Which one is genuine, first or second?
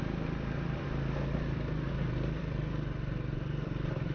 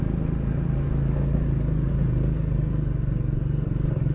second